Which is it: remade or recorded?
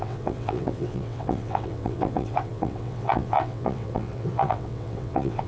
remade